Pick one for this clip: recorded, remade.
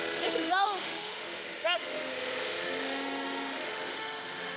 remade